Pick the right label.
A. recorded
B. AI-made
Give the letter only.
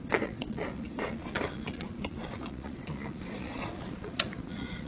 B